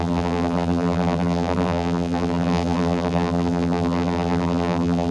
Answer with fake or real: fake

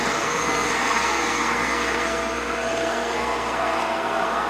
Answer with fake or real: fake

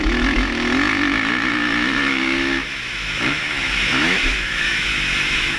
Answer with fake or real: fake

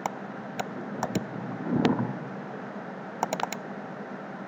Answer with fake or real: fake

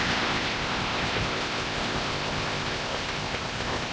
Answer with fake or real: fake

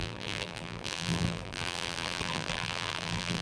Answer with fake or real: fake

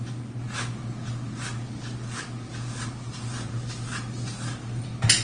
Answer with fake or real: real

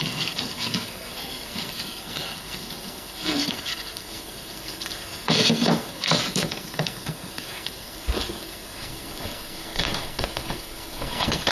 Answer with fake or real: fake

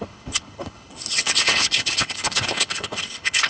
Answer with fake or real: fake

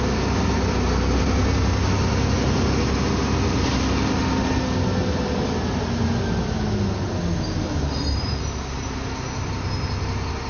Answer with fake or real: real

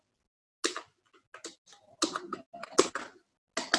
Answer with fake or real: real